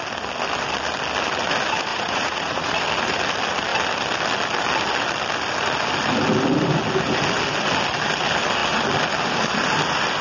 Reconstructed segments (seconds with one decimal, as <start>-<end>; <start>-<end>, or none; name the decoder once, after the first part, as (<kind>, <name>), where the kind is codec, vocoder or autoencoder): 1.9-2.8 (vocoder, Vocos)